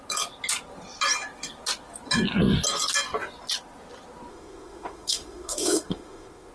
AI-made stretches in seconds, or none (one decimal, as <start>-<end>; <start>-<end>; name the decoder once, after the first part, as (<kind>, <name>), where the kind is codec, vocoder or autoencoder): 4.3-6.5 (autoencoder, DAC-VAE)